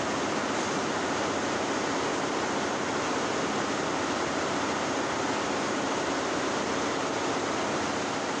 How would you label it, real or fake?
real